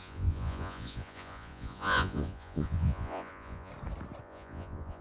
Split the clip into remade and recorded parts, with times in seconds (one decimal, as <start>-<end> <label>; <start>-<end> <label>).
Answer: 0.0-3.7 remade; 3.7-4.2 recorded; 4.2-5.0 remade